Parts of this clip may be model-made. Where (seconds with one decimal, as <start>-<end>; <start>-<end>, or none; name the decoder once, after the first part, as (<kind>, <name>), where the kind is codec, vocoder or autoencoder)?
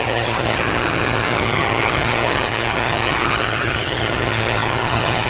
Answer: 0.0-5.3 (vocoder, HiFi-GAN)